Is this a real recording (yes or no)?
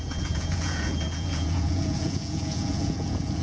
no